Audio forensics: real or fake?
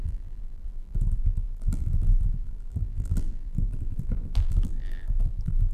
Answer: fake